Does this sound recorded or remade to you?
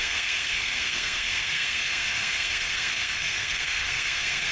remade